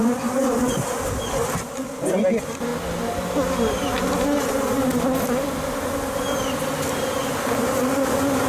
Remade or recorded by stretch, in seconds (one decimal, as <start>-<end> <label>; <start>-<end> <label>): 0.0-7.2 recorded; 7.2-8.5 remade